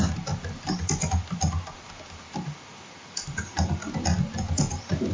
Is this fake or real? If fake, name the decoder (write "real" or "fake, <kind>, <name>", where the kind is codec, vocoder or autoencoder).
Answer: real